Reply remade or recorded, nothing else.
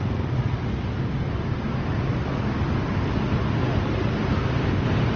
recorded